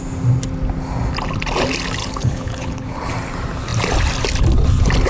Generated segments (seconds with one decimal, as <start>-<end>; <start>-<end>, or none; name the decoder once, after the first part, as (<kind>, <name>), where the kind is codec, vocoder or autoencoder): 2.0-3.1 (codec, HILCodec)